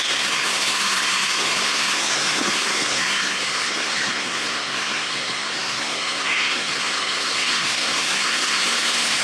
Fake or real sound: fake